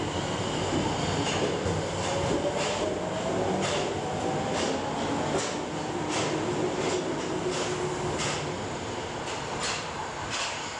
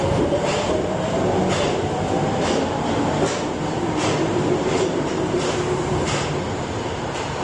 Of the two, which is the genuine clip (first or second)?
first